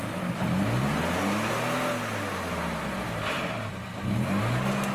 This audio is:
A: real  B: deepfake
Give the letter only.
A